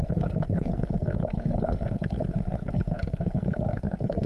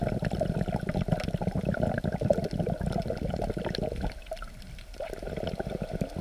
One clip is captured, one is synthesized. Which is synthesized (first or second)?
first